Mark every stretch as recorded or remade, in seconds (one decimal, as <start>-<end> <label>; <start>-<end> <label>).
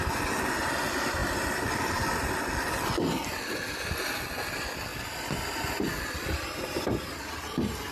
0.0-1.2 recorded; 1.2-2.4 remade; 2.4-4.9 recorded; 4.9-7.1 remade; 7.1-7.9 recorded